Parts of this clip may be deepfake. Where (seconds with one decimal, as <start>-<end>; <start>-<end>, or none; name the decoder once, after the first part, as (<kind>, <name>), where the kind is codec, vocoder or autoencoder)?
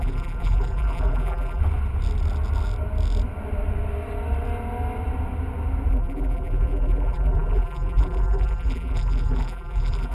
0.0-1.6 (vocoder, BigVGAN v2); 5.9-10.1